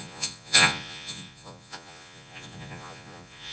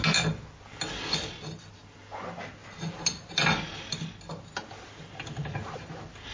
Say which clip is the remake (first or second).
first